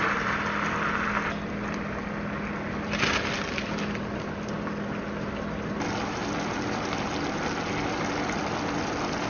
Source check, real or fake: real